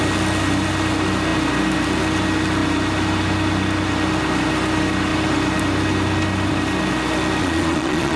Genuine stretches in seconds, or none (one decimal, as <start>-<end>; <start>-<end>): 0.0-7.4

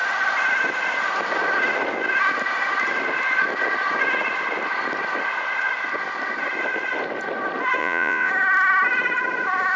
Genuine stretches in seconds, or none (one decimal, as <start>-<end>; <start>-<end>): 0.0-7.8; 8.3-9.8

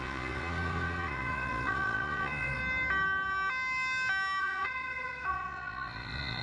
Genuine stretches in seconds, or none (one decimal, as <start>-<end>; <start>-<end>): 2.6-4.4

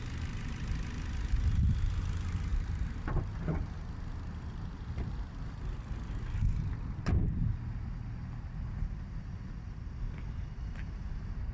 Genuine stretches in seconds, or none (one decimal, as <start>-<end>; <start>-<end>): 0.0-11.5

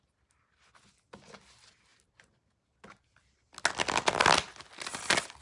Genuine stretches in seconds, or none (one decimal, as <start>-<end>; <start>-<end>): 0.0-5.4